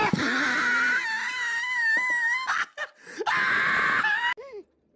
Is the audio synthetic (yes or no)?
no